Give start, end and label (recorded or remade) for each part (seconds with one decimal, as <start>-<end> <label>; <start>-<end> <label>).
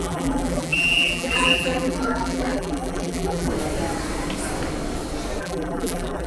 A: 0.0-3.5 remade; 3.5-5.4 recorded; 5.4-6.3 remade